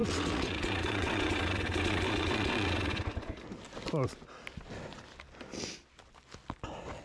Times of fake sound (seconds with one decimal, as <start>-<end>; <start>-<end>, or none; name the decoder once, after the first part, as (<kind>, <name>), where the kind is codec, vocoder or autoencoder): 0.0-3.0 (vocoder, WaveNeXt)

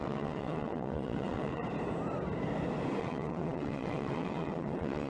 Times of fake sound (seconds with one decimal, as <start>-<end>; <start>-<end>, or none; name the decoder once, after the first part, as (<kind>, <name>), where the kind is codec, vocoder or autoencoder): 0.0-1.6 (vocoder, WaveNeXt); 3.0-5.1

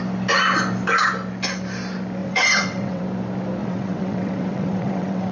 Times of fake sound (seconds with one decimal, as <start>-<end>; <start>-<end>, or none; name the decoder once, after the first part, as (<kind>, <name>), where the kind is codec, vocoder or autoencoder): 2.2-3.0 (vocoder, WaveNeXt); 3.6-5.3

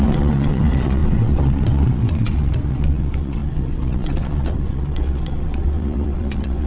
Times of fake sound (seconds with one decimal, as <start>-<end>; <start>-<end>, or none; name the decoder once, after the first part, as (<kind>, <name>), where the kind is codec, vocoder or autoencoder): 0.0-6.7 (vocoder, WaveNeXt)

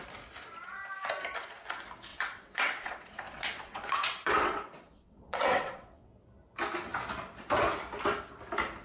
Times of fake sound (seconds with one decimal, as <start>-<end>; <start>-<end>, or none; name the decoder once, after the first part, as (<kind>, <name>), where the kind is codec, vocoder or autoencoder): 2.1-6.1 (vocoder, WaveNeXt)

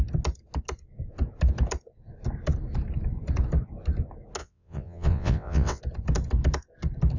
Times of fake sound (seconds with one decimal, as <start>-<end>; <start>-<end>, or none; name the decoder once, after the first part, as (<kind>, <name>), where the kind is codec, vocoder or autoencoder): 4.4-5.8 (vocoder, WaveNeXt)

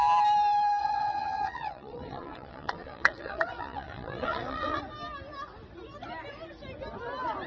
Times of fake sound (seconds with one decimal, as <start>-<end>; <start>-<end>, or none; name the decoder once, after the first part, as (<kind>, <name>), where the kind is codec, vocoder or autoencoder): 0.8-4.8 (vocoder, WaveNeXt)